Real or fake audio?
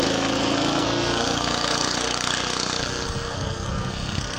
fake